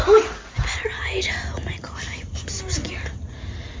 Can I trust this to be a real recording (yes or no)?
yes